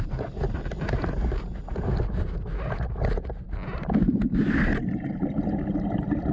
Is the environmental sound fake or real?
real